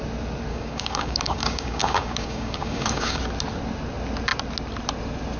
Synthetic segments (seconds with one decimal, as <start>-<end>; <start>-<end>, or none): 0.5-3.2